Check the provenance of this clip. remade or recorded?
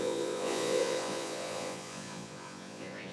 remade